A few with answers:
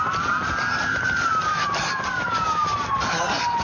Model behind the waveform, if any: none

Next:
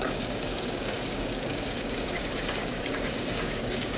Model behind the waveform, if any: codec, DAC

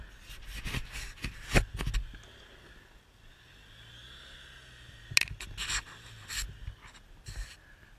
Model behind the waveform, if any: none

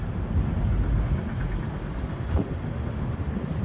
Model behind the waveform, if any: none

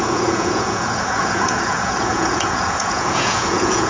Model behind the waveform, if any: vocoder, Vocos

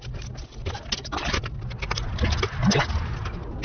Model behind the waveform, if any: none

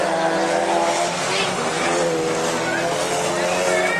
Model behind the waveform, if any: none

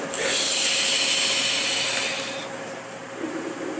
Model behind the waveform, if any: none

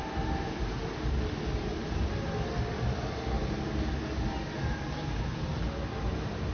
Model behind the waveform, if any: none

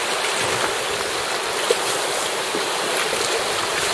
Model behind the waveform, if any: none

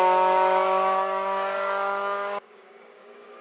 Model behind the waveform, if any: codec, DAC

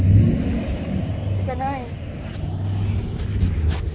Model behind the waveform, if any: none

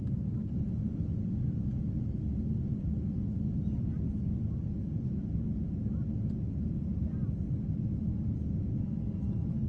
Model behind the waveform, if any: none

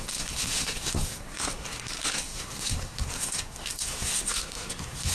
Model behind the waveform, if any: codec, SNAC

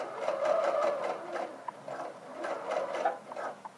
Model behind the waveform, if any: none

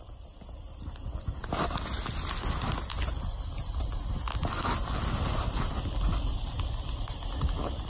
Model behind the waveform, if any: none